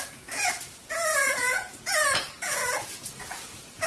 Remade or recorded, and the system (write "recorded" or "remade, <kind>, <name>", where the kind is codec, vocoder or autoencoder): remade, vocoder, Vocos